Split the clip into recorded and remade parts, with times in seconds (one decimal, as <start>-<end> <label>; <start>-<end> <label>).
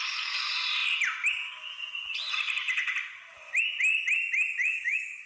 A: 0.0-4.7 recorded; 4.7-5.3 remade